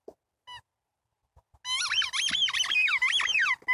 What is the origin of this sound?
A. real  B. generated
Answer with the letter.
A